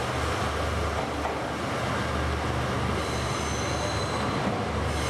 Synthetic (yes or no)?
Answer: no